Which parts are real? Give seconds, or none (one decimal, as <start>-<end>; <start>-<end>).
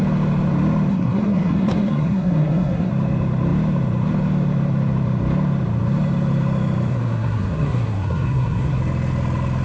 0.0-0.9; 2.9-6.9; 8.8-9.6